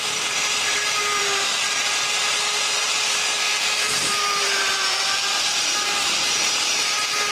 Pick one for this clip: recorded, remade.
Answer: remade